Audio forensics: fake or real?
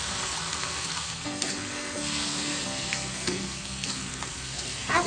fake